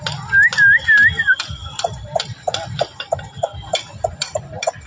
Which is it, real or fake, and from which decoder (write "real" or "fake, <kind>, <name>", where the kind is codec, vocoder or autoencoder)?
real